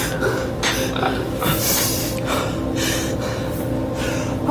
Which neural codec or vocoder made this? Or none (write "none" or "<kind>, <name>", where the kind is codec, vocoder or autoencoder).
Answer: none